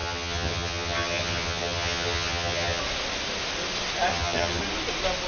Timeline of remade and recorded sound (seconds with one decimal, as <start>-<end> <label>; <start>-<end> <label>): 0.0-2.8 remade; 2.8-4.1 recorded; 4.1-4.6 remade; 4.6-5.3 recorded